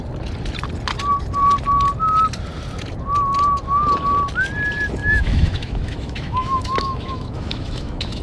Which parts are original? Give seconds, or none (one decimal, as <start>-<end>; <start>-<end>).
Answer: 0.0-5.0

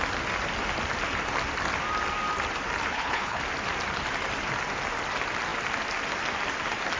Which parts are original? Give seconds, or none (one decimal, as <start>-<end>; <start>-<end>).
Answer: 0.0-2.9; 3.4-7.0

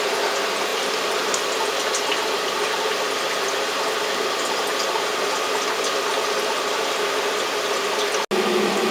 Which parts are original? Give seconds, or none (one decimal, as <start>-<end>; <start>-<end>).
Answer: 0.0-0.7; 1.4-8.9

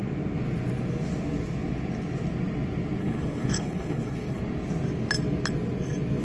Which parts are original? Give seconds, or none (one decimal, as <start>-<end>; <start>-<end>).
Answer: 0.0-3.0; 4.4-6.2

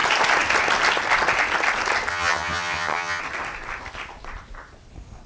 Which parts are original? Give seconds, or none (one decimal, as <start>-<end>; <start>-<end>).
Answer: 0.0-2.1; 3.2-5.3

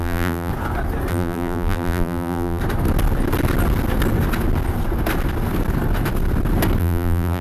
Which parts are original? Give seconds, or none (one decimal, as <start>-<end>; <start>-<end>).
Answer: 0.5-1.1; 2.6-6.8

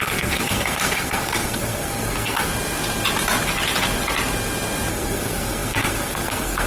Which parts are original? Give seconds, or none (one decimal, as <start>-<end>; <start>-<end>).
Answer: 2.5-4.9